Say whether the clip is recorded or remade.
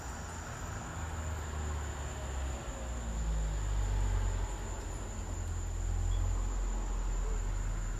recorded